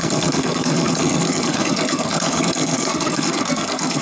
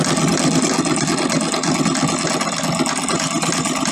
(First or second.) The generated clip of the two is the first